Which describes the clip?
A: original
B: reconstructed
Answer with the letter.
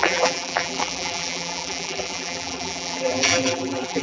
B